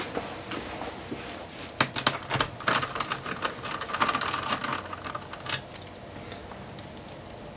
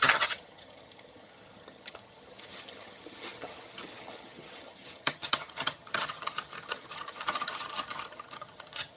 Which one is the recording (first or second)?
first